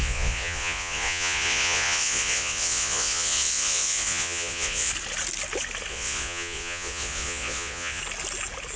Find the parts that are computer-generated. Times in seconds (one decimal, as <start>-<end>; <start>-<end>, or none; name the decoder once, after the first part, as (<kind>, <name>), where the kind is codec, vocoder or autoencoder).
0.0-4.9 (vocoder, Vocos); 5.9-8.0